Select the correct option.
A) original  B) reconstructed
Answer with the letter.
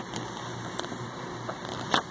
A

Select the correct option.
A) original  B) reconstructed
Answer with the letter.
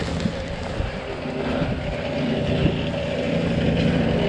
A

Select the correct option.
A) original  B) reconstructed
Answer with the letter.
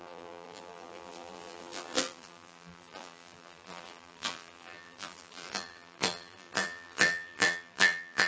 B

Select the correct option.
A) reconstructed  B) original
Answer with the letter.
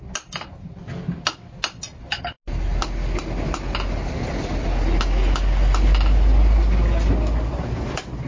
B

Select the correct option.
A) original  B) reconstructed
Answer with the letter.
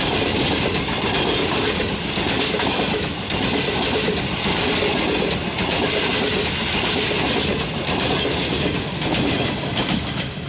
A